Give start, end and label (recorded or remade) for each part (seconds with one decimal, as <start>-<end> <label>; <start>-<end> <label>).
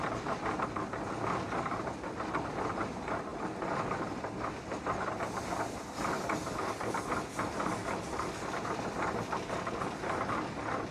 0.0-10.9 recorded